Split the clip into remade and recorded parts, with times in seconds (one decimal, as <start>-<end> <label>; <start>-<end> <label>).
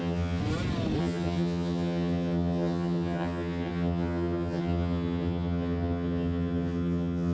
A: 0.0-0.4 remade; 0.4-1.0 recorded; 1.0-7.3 remade